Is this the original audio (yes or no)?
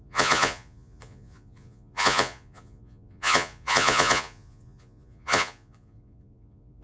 no